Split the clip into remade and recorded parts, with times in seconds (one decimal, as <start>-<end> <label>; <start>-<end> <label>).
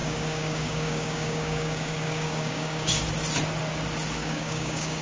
0.0-3.0 remade; 3.0-4.2 recorded; 4.2-5.0 remade